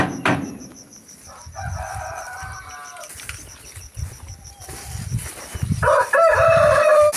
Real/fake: fake